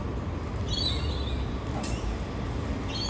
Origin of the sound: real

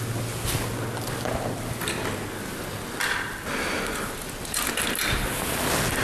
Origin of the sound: real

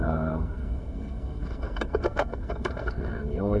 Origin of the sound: fake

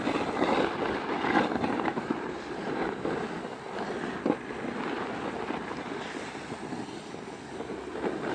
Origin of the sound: real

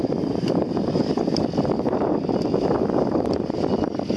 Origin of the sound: real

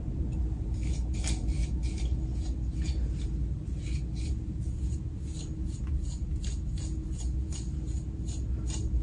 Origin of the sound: real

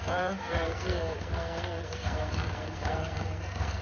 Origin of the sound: fake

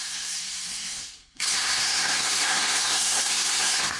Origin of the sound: fake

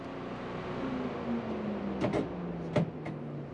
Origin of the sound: real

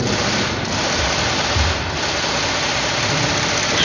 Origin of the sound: real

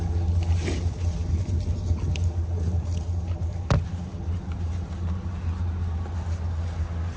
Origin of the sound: real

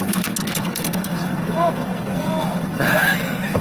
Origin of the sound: fake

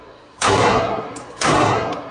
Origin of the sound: fake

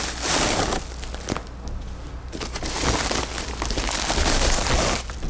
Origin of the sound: real